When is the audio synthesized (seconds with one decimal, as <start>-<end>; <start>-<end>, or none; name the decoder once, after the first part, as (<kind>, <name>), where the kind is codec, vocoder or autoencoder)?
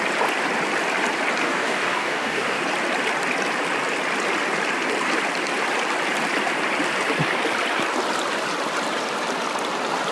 1.4-2.6 (codec, DAC)